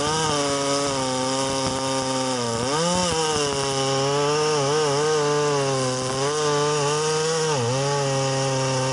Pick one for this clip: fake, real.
real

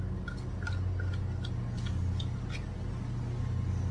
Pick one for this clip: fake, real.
real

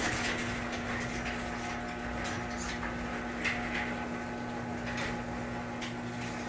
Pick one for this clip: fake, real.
real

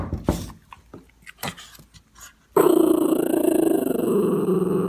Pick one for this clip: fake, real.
real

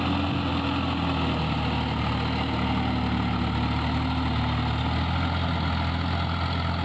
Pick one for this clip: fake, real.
real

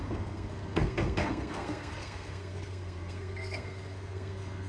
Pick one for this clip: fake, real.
fake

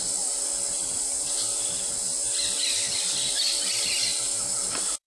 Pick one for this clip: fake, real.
real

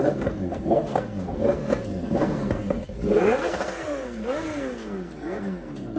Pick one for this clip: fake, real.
fake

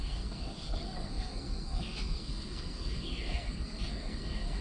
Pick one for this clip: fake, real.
fake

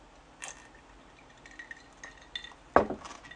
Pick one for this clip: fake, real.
real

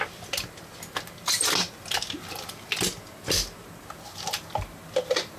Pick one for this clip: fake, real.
real